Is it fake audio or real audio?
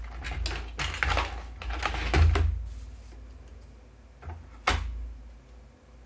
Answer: real